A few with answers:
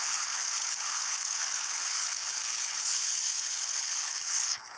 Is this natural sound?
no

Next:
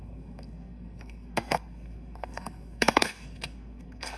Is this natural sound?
no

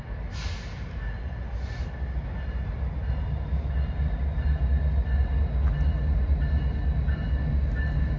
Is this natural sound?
yes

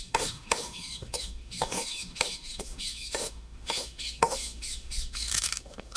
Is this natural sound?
no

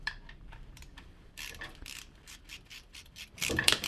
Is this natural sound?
no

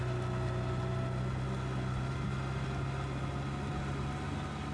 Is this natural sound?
yes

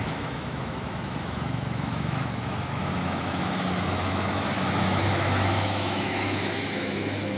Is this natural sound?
no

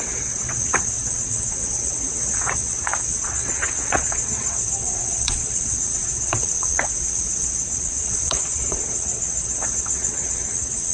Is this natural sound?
no